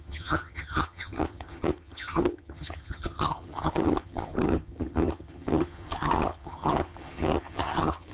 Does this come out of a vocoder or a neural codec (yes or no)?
yes